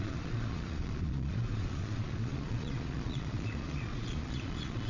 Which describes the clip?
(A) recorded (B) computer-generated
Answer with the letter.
B